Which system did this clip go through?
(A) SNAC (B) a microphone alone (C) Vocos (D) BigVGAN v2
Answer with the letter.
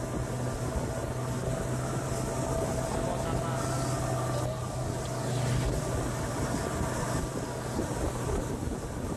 B